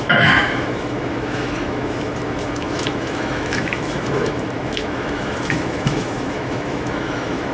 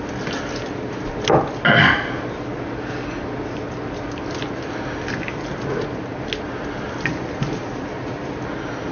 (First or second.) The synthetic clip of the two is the first